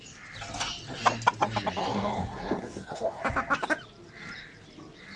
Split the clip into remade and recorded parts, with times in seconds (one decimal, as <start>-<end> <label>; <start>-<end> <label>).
0.0-1.8 recorded; 1.8-3.2 remade; 3.2-5.2 recorded